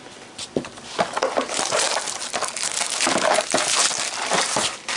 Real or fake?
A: real